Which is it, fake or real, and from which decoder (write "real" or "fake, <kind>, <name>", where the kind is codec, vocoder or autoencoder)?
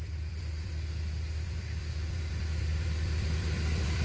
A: fake, vocoder, BigVGAN v2